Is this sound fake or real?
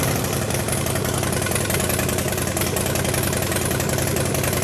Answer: real